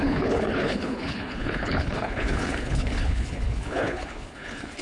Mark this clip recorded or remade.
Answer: remade